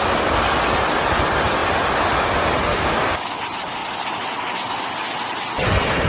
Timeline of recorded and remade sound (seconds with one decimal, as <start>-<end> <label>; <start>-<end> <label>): 0.0-2.7 recorded; 2.7-3.4 remade; 3.4-6.1 recorded